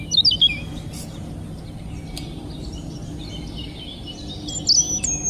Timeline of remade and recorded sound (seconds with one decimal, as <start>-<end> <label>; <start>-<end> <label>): 0.0-5.3 recorded